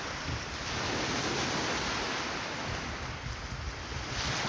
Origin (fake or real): real